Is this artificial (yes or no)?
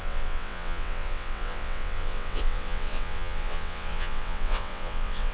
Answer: yes